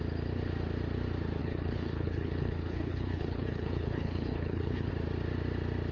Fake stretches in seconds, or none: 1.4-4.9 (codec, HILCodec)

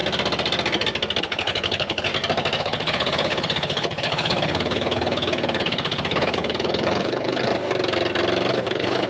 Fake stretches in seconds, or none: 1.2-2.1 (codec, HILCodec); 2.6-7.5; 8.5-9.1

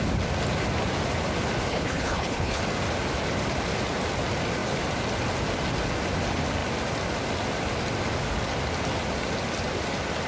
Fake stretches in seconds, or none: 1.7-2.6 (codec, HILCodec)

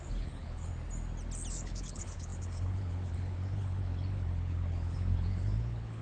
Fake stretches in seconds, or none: 0.0-0.7 (codec, HILCodec); 1.5-6.0

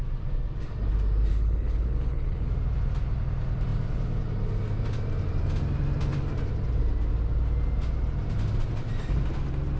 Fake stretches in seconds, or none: 1.3-2.5 (codec, HILCodec)

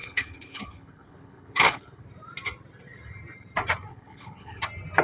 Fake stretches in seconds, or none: 0.0-2.0 (codec, HILCodec); 3.9-4.6

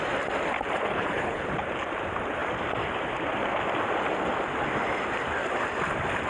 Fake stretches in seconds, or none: 0.9-1.5 (codec, HILCodec)